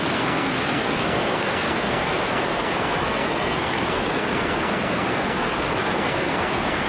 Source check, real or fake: fake